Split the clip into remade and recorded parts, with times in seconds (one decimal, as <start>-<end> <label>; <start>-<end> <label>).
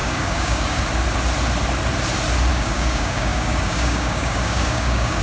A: 0.0-0.8 remade; 0.8-2.5 recorded; 2.5-5.2 remade